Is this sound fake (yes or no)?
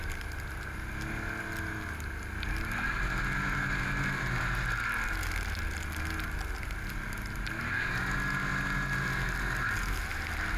no